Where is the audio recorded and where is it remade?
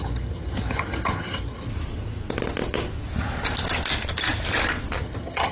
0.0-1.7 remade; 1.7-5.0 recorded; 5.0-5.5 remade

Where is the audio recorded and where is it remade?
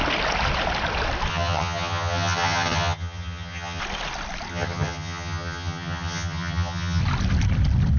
0.0-1.3 recorded; 1.3-3.8 remade; 3.8-4.5 recorded; 4.5-7.0 remade; 7.0-8.0 recorded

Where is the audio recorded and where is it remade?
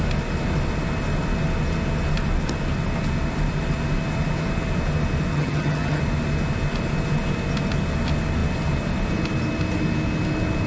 0.0-5.3 recorded; 5.3-6.0 remade; 6.0-10.7 recorded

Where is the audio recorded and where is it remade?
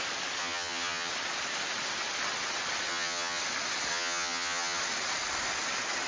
0.0-0.4 recorded; 0.4-1.1 remade; 1.1-2.9 recorded; 2.9-3.4 remade; 3.4-3.9 recorded; 3.9-4.8 remade; 4.8-6.1 recorded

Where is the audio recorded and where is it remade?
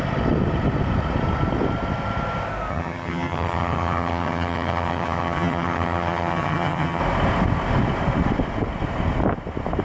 0.0-2.7 recorded; 2.7-7.0 remade; 7.0-9.8 recorded